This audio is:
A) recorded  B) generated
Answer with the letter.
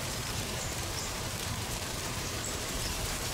B